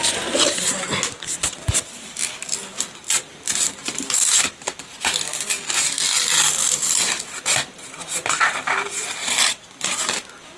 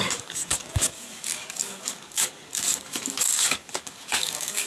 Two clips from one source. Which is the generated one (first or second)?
second